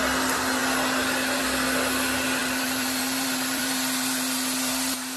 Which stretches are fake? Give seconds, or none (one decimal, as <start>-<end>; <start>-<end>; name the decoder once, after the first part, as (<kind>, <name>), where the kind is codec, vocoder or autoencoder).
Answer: 2.4-5.2 (vocoder, BigVGAN v2)